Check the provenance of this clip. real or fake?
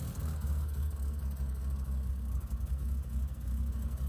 fake